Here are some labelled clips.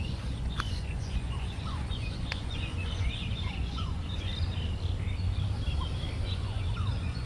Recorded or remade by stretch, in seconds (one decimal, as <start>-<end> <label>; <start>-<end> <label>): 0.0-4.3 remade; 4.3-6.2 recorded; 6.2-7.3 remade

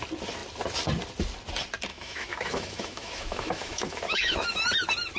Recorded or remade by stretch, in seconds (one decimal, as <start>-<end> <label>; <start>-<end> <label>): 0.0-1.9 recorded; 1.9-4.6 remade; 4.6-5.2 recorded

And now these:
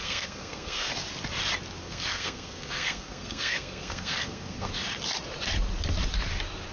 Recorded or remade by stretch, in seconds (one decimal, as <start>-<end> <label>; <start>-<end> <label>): 0.0-0.9 remade; 0.9-1.8 recorded; 1.8-4.7 remade; 4.7-6.7 recorded

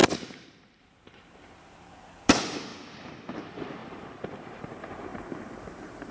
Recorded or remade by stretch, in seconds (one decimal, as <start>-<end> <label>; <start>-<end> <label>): 0.0-0.8 recorded; 0.8-2.7 remade; 2.7-3.4 recorded; 3.4-5.1 remade; 5.1-6.1 recorded

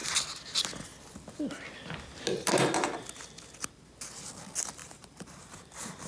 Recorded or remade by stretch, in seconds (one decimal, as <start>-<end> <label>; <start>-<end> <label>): 0.0-4.8 recorded; 4.8-6.1 remade

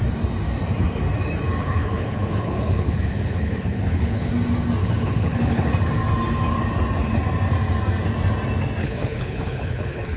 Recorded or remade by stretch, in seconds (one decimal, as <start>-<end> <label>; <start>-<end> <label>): 0.0-1.6 recorded; 1.6-4.3 remade; 4.3-4.8 recorded; 4.8-5.7 remade; 5.7-8.8 recorded; 8.8-10.2 remade

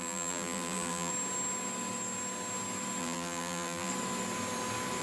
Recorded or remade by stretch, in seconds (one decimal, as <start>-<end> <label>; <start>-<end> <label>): 0.0-1.1 remade; 1.1-3.0 recorded; 3.0-3.9 remade; 3.9-5.0 recorded

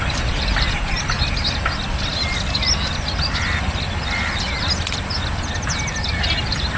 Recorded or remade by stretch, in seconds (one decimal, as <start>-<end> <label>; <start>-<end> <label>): 0.0-6.8 recorded